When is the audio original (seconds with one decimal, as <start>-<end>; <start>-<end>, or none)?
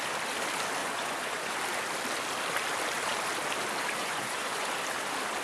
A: 0.0-0.8; 1.6-4.0; 4.7-5.4